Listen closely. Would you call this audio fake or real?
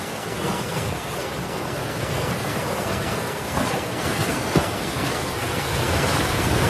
fake